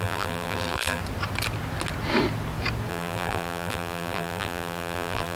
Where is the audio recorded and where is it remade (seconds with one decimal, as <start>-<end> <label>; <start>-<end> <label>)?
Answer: 0.0-1.0 remade; 1.0-2.9 recorded; 2.9-5.4 remade